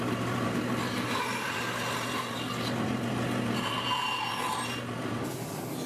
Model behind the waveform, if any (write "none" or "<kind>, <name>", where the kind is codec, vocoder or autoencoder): none